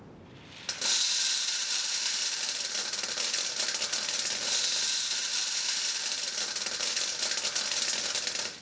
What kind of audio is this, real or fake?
real